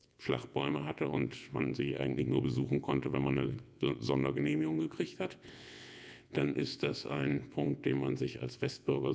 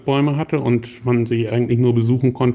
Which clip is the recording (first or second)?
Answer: second